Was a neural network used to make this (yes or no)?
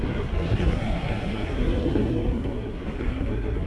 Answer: yes